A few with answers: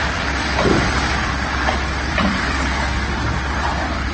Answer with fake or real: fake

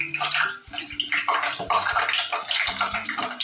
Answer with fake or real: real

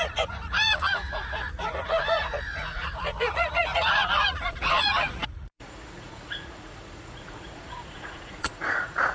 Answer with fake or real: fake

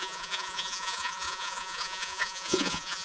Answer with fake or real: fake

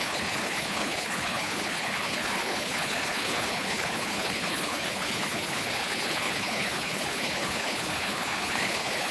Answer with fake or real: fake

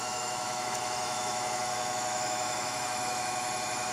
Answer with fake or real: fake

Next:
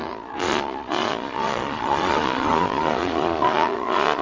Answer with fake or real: fake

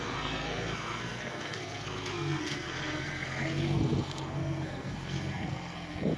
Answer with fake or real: fake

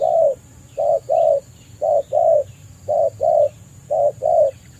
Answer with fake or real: fake